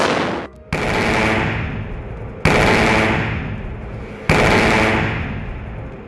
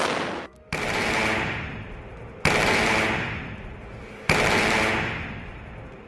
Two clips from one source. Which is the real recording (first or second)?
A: first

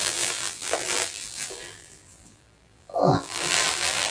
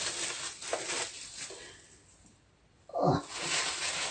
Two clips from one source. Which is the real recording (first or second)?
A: second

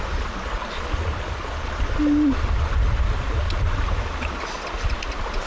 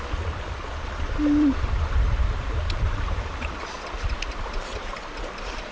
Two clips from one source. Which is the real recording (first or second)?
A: first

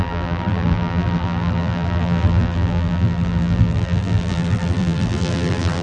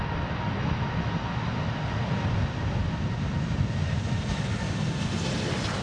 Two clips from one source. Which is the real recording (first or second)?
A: second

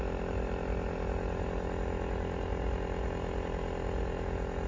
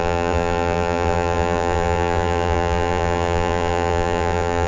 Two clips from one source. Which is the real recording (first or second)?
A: first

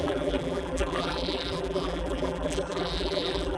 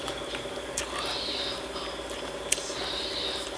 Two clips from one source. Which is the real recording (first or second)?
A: second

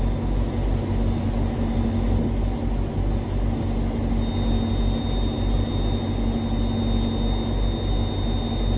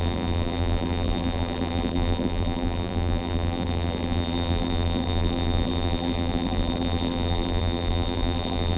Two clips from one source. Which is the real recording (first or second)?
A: first